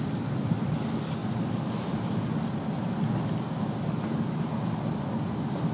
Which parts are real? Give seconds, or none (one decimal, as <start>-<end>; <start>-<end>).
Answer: 0.0-5.7